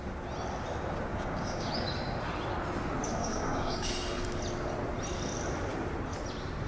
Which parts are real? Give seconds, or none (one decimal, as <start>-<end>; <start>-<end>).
0.0-1.1; 1.7-3.2; 3.9-6.7